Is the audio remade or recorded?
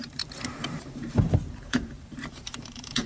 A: remade